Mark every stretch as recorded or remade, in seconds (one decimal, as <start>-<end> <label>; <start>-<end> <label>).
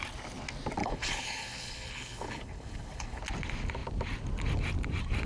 0.0-0.8 recorded; 0.8-3.2 remade; 3.2-5.3 recorded